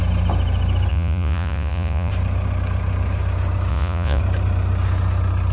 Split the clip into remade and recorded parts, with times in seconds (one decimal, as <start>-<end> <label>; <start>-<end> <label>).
0.0-0.9 recorded; 0.9-2.1 remade; 2.1-3.7 recorded; 3.7-4.2 remade; 4.2-5.5 recorded